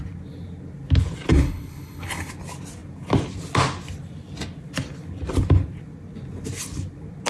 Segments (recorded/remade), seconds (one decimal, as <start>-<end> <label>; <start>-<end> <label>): 0.0-1.3 recorded; 1.3-2.3 remade; 2.3-7.3 recorded